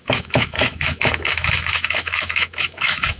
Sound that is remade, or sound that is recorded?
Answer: remade